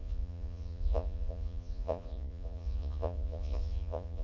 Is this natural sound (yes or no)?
no